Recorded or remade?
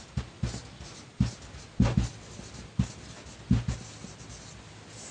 recorded